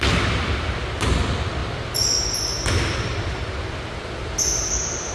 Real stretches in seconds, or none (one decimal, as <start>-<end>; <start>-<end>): 0.0-5.1